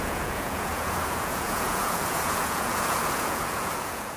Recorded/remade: remade